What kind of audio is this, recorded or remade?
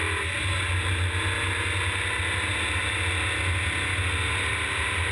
recorded